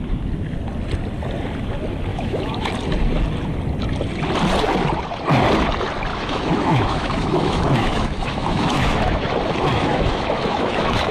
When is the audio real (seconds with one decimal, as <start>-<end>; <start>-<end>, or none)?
0.0-2.1; 2.7-6.1; 9.2-9.7

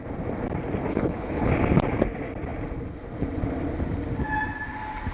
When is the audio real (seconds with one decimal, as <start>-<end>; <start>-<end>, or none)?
0.0-0.9; 1.5-5.1

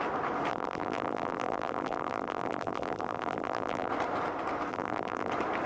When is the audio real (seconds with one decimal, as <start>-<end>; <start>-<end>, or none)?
0.0-0.5; 3.9-4.7; 5.3-5.7